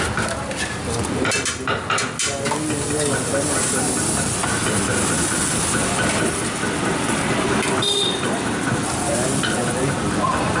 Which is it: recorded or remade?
recorded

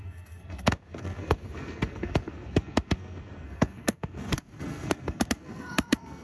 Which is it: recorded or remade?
remade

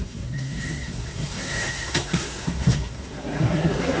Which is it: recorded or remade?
remade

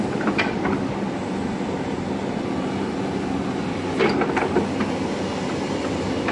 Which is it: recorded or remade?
recorded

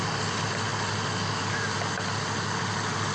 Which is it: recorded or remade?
recorded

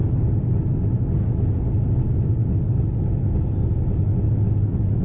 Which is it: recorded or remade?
recorded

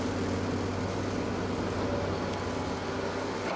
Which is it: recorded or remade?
recorded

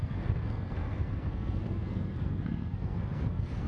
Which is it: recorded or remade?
remade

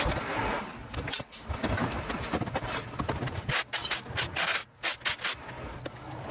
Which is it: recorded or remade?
recorded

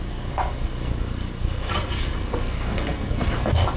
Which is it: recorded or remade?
remade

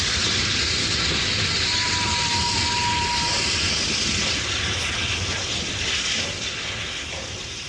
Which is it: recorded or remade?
recorded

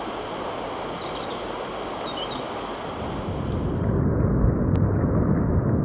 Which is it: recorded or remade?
recorded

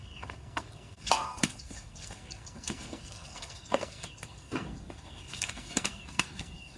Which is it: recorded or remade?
remade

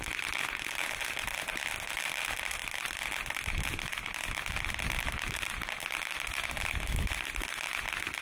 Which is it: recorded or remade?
recorded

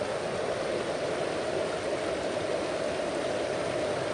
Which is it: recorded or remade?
recorded